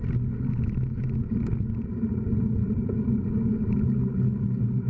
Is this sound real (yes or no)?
yes